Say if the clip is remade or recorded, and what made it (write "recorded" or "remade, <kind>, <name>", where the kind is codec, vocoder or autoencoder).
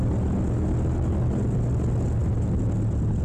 recorded